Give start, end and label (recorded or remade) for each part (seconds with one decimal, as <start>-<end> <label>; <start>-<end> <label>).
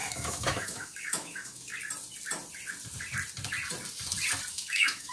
0.0-1.7 remade; 1.7-4.5 recorded; 4.5-5.1 remade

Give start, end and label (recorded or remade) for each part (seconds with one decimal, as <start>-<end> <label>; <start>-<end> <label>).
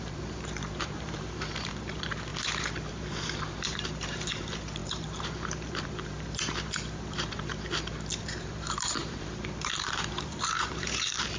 0.0-2.3 remade; 2.3-2.9 recorded; 2.9-7.5 remade; 7.5-8.2 recorded; 8.2-11.4 remade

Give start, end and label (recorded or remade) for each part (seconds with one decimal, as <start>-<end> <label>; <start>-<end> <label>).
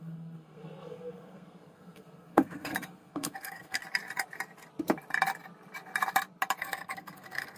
0.0-3.8 remade; 3.8-6.6 recorded; 6.6-7.6 remade